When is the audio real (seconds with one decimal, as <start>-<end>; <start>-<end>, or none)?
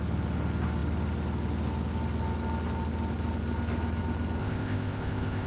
0.0-4.4